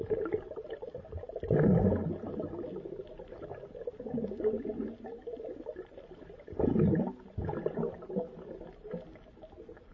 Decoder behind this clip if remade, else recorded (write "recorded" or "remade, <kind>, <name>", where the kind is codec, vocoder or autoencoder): recorded